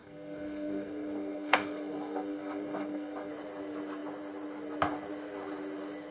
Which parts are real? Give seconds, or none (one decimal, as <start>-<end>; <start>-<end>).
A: 3.3-6.1